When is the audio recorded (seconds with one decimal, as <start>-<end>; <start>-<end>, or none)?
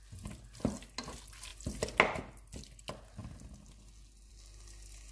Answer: 0.0-5.1